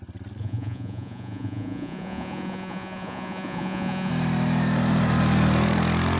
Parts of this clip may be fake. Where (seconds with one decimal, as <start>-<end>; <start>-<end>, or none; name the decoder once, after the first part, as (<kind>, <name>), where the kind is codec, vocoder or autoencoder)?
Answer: 0.4-4.1 (vocoder, Vocos)